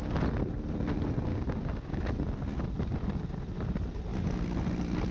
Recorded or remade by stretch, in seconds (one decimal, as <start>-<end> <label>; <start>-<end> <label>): 0.0-1.3 recorded; 1.3-2.0 remade; 2.0-5.1 recorded